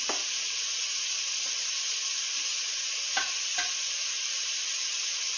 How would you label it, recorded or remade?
recorded